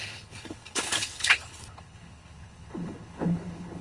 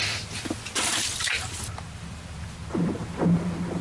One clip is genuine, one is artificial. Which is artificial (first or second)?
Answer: first